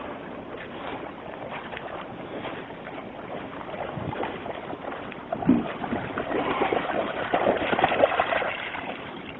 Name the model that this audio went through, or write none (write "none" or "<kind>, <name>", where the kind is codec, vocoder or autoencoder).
none